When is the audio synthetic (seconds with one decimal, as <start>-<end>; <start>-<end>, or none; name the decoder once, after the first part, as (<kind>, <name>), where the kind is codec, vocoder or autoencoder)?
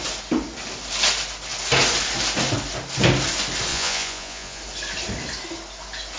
3.7-4.6 (vocoder, Vocos)